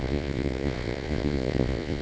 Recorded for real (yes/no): no